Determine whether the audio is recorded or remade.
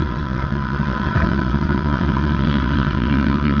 remade